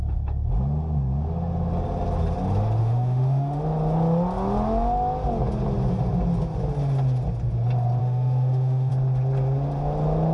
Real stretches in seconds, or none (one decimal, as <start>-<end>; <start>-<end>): 0.0-2.8; 3.6-8.0; 8.9-10.3